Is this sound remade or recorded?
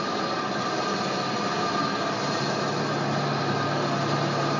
recorded